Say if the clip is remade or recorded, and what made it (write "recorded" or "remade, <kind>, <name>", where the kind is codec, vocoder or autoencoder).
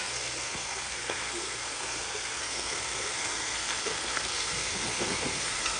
remade, codec, SNAC